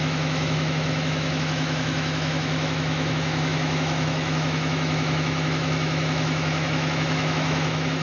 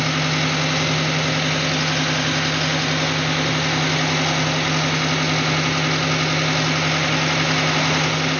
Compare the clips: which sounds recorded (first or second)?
second